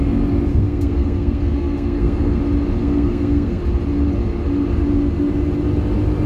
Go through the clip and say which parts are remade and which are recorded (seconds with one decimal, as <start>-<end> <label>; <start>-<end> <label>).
0.0-0.5 recorded; 0.5-2.4 remade; 2.4-2.8 recorded; 2.8-3.6 remade; 3.6-6.3 recorded